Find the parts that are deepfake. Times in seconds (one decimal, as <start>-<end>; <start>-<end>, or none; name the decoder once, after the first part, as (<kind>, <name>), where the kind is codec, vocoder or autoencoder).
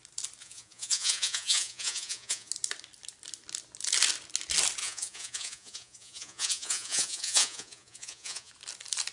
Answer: 0.4-2.5 (vocoder, Vocos); 4.8-8.5